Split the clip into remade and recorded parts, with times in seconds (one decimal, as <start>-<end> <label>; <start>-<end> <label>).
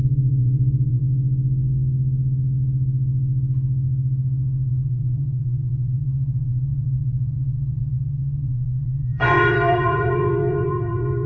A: 0.0-1.0 remade; 1.0-4.7 recorded; 4.7-11.3 remade